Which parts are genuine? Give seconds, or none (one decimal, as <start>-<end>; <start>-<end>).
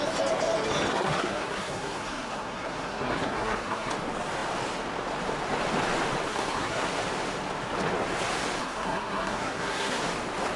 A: 0.0-0.9; 3.9-6.3; 6.9-8.6; 10.0-10.6